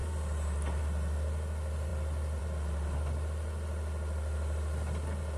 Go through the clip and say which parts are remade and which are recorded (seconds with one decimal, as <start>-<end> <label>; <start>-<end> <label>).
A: 0.0-5.4 recorded